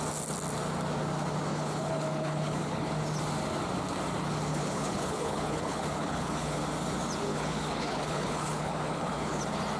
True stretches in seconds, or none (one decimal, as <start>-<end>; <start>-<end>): 0.0-1.5; 2.9-4.5; 6.6-7.3; 9.4-9.8